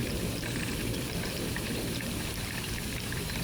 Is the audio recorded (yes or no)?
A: no